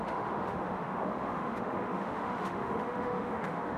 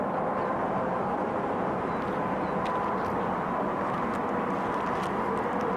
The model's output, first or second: first